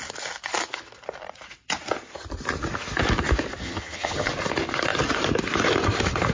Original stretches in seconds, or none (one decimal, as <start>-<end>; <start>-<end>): 0.0-3.6; 4.3-6.3